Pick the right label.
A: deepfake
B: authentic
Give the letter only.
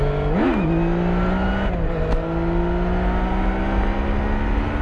B